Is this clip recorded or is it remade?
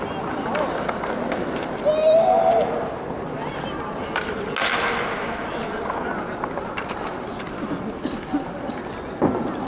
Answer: recorded